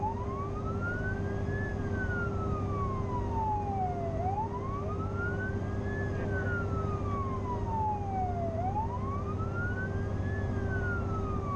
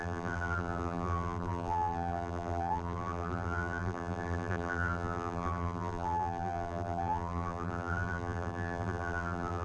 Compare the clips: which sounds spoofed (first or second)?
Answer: second